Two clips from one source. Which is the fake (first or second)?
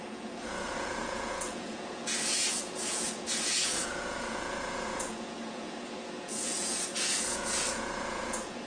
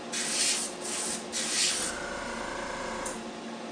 first